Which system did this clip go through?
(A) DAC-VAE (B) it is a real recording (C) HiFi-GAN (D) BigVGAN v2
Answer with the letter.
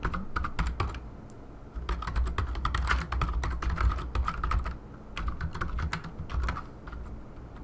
B